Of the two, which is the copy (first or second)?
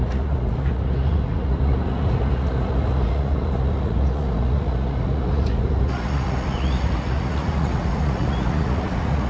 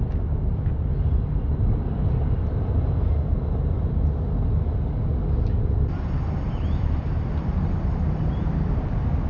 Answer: first